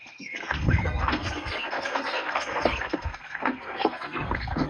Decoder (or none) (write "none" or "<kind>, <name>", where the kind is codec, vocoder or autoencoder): codec, SNAC